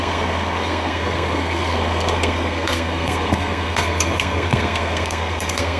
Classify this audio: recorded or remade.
remade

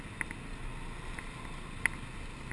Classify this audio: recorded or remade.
recorded